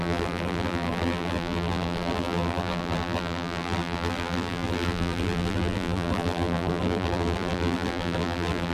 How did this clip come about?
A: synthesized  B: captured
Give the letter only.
A